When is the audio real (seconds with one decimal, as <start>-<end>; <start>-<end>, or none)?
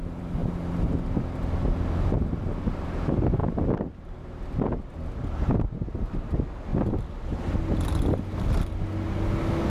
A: 0.4-2.7; 3.4-6.0; 6.7-9.7